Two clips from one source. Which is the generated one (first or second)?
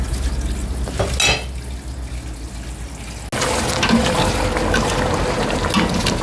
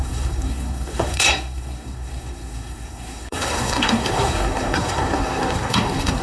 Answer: second